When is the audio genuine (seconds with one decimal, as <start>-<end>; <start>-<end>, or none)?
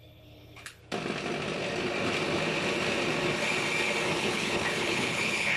0.8-4.2